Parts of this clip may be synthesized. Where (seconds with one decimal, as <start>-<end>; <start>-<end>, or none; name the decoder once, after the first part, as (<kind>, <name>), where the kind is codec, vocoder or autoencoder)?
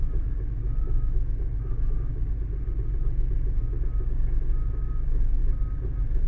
0.0-2.1 (autoencoder, DAC-VAE); 4.6-5.4